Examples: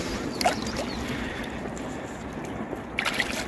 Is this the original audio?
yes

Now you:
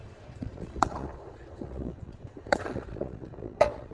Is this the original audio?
no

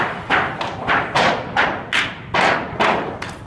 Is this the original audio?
yes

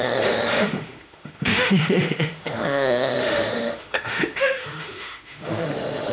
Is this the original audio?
no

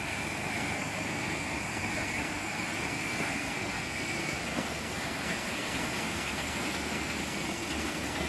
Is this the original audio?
no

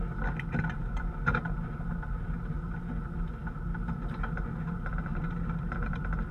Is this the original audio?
yes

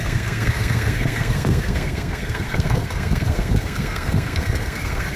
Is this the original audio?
no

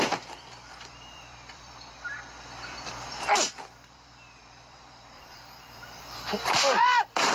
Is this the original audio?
no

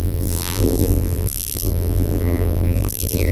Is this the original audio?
no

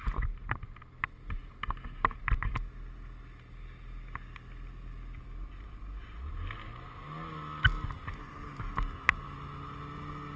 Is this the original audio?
yes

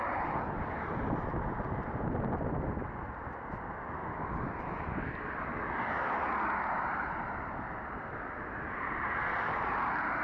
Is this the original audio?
yes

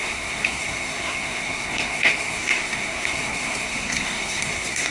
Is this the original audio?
no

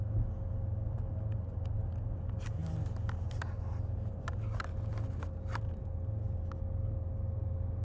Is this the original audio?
yes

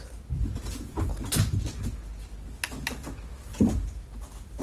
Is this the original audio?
yes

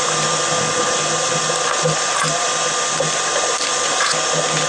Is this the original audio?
yes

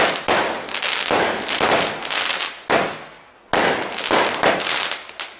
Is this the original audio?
yes